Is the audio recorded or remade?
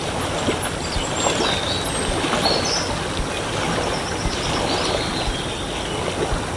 recorded